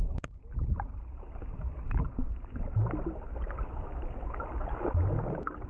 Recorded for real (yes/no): yes